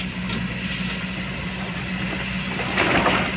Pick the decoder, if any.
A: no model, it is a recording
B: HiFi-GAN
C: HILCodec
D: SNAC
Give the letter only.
A